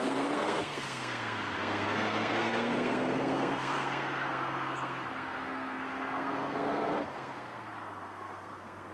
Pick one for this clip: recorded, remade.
remade